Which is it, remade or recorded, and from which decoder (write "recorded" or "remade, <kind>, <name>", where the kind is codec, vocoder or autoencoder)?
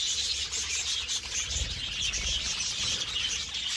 recorded